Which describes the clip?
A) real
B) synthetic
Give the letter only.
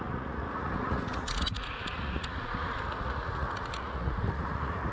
B